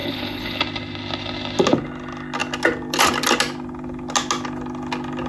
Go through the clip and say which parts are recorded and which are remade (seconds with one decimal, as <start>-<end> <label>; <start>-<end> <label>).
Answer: 0.0-0.6 remade; 0.6-5.3 recorded